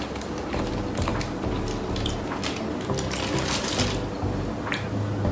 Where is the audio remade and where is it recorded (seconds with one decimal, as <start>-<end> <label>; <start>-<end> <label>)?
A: 0.0-5.3 recorded